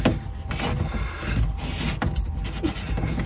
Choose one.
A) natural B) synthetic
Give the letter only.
A